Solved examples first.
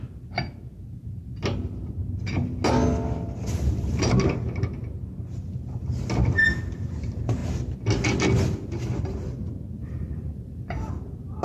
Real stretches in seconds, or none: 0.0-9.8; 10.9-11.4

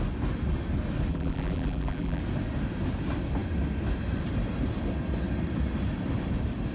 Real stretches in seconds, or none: 0.0-1.1; 2.2-6.7

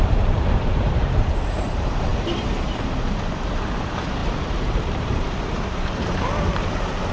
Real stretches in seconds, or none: none

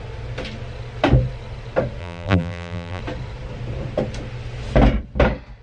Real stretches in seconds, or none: 0.0-2.0; 3.0-5.6

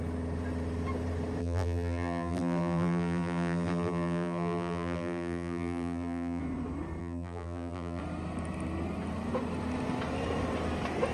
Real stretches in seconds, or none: 0.0-1.4; 6.4-7.0; 8.0-11.1